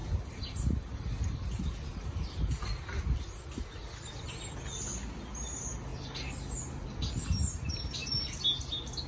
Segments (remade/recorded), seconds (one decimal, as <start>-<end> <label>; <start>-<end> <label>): 0.0-9.1 recorded